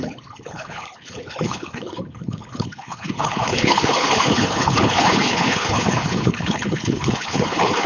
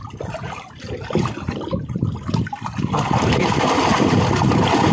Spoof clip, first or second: first